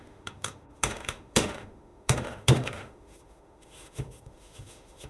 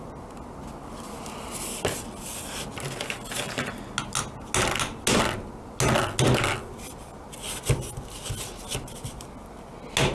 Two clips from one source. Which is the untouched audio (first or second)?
second